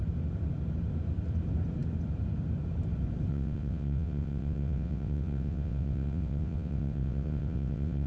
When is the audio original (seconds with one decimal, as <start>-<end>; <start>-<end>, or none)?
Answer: 0.0-3.3